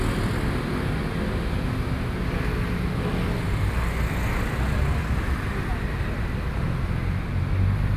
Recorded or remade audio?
recorded